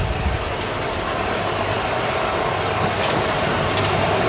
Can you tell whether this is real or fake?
real